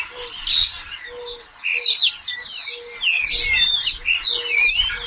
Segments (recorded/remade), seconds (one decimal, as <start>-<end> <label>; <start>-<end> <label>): 0.0-5.1 recorded